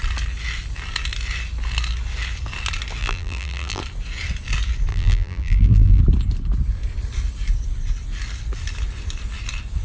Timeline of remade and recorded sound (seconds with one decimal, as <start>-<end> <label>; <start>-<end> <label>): 0.0-3.0 recorded; 3.0-3.8 remade; 3.8-4.9 recorded; 4.9-6.0 remade; 6.0-9.8 recorded